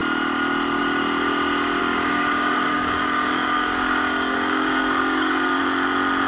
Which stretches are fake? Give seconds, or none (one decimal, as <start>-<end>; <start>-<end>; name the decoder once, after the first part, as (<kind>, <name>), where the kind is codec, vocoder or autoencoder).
1.8-5.6 (codec, DAC)